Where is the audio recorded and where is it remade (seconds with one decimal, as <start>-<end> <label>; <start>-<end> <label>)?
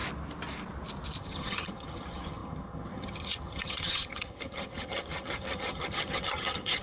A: 0.0-1.2 recorded; 1.2-6.8 remade